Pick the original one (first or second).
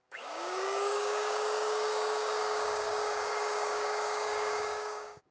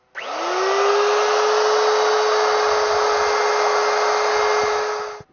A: second